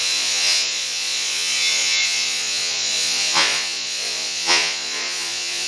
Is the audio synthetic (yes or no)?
yes